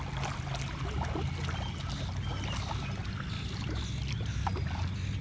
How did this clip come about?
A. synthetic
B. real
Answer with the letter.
B